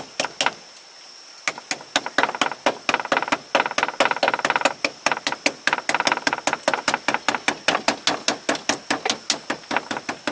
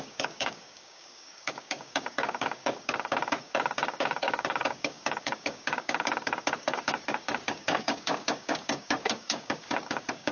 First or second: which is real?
first